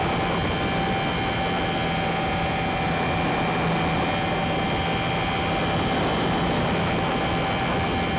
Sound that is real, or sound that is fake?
real